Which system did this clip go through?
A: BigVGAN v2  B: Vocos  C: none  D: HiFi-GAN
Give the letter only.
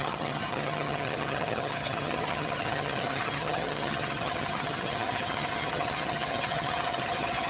D